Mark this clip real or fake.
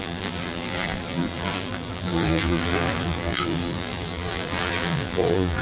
fake